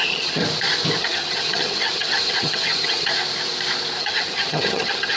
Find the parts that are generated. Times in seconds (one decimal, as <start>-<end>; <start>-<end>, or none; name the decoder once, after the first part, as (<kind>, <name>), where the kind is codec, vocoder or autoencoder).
0.0-0.4 (vocoder, HiFi-GAN); 1.0-3.1; 4.0-5.2